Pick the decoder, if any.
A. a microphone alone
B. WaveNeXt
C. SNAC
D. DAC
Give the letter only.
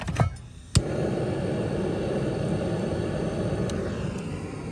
A